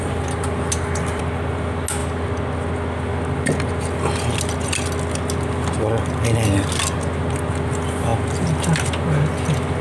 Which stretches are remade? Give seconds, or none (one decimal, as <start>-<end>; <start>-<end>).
none